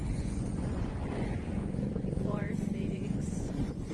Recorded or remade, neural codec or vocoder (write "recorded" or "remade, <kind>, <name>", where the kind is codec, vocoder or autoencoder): remade, vocoder, Vocos